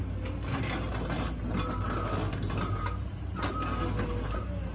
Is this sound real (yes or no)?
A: yes